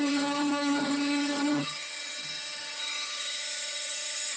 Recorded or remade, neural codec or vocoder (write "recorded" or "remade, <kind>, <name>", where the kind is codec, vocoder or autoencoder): remade, vocoder, HiFi-GAN